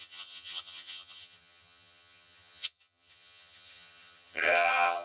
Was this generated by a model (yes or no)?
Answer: yes